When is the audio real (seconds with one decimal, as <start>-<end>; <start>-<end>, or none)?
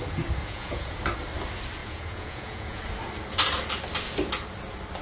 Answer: 0.0-0.4; 1.0-1.8; 2.8-5.0